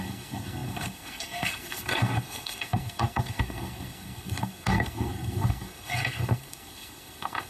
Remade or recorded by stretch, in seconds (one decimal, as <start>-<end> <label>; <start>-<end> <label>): 0.0-7.5 remade